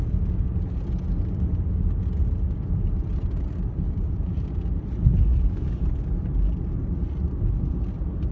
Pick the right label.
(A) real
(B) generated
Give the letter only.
A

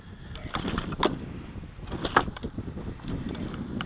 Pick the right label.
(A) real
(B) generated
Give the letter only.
A